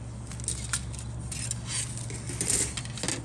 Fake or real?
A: real